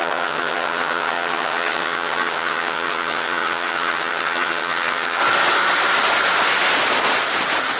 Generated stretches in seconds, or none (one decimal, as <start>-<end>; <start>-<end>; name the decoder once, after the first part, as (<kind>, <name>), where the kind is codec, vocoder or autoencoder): 0.0-5.2 (vocoder, HiFi-GAN)

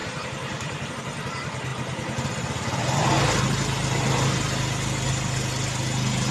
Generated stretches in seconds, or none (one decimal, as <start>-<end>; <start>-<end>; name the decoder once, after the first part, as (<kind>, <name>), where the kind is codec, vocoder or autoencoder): 0.0-0.9 (vocoder, BigVGAN v2)

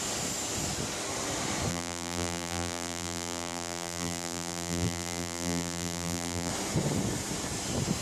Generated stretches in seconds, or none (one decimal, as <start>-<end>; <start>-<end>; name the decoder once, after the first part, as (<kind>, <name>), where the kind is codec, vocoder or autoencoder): 1.7-6.5 (vocoder, BigVGAN v2)

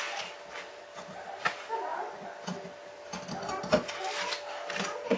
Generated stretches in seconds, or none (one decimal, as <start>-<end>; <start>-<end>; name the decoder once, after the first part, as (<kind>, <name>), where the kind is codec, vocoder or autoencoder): none

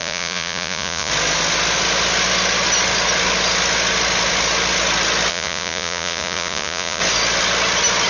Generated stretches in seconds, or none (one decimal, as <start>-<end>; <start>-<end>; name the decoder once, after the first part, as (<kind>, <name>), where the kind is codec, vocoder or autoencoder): 0.0-1.1 (vocoder, Vocos); 5.3-7.0

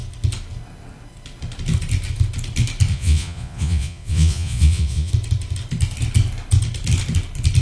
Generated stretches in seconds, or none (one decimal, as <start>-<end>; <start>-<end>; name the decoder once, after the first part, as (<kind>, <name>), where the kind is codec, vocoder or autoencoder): 2.9-5.1 (vocoder, Vocos)